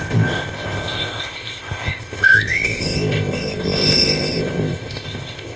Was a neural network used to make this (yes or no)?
yes